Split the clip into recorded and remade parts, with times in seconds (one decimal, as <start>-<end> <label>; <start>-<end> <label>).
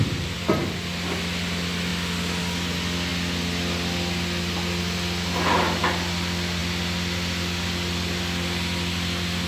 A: 0.0-9.5 recorded